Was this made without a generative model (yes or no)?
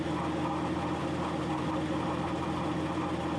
yes